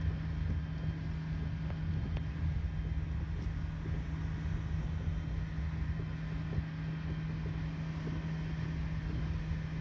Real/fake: real